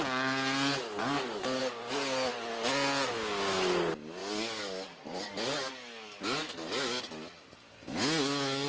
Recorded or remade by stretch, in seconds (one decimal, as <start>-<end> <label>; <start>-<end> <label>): 0.0-1.0 recorded; 1.0-1.6 remade; 1.6-4.2 recorded; 4.2-7.0 remade; 7.0-8.7 recorded